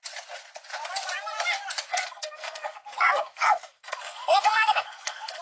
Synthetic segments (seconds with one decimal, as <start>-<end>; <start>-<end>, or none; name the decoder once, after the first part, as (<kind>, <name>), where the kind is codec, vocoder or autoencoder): 1.9-5.4 (codec, SNAC)